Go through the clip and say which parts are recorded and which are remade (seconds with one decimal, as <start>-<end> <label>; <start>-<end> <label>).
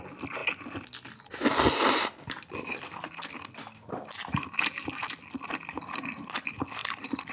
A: 0.0-7.3 recorded